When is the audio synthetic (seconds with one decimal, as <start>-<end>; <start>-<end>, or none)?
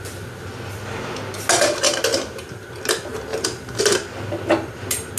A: 2.1-2.7; 3.3-3.8